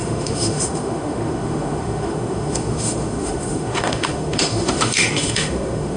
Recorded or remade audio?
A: remade